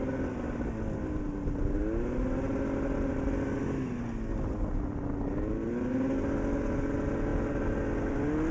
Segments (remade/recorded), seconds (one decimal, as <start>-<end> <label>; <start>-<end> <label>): 0.0-8.5 recorded